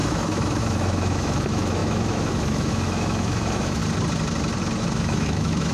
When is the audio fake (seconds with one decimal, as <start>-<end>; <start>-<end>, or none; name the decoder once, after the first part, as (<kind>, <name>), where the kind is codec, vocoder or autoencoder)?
0.0-3.8 (autoencoder, DAC-VAE); 4.8-5.7